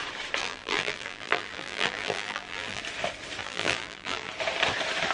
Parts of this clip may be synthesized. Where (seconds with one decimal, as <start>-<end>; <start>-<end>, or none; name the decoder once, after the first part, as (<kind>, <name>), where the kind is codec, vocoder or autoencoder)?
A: 0.4-2.8 (vocoder, BigVGAN v2); 3.4-4.3